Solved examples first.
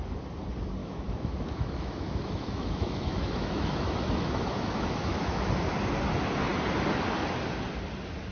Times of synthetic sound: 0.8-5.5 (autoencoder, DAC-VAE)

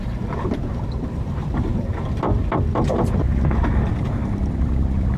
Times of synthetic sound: 0.0-1.7 (vocoder, BigVGAN v2); 4.5-5.2